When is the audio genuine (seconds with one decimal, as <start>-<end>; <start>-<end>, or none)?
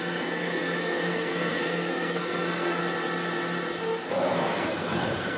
2.8-4.1